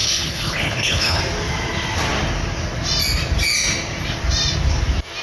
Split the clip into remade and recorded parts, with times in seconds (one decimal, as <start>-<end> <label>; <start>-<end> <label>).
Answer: 0.0-1.2 remade; 1.2-5.2 recorded